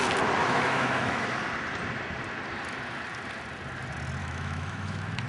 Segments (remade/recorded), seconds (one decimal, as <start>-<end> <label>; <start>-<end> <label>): 0.0-0.4 recorded; 0.4-1.3 remade; 1.3-4.2 recorded; 4.2-5.3 remade